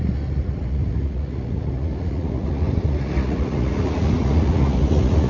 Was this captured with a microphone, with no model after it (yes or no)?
no